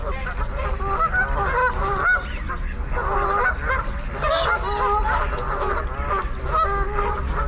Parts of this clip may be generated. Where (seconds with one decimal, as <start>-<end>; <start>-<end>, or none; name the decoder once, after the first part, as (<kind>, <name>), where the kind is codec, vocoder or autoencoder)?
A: none